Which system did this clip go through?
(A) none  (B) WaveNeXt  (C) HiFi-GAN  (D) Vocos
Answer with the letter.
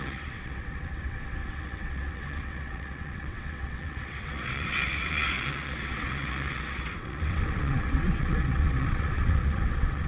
B